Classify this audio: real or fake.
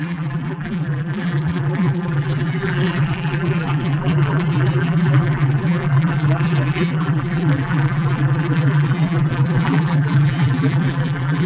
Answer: fake